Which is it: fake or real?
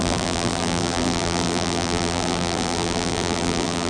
fake